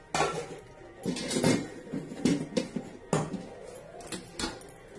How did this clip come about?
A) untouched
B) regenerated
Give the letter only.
A